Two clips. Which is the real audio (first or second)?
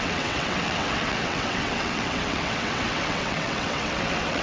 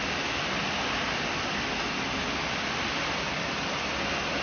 second